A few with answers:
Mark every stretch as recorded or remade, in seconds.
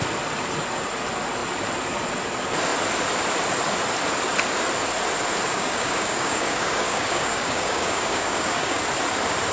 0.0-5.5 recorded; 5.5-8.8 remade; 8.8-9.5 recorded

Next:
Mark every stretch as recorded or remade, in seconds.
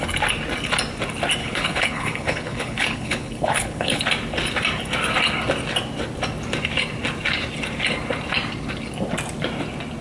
0.0-1.4 recorded; 1.4-4.0 remade; 4.0-10.0 recorded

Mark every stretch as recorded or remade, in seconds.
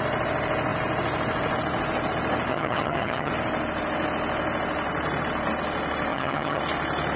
0.0-2.5 recorded; 2.5-3.3 remade; 3.3-6.1 recorded; 6.1-6.6 remade; 6.6-7.2 recorded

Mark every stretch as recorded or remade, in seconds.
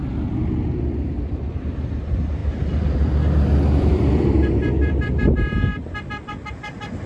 0.0-7.1 recorded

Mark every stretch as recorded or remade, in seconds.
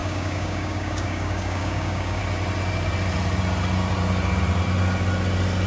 0.0-2.2 remade; 2.2-5.7 recorded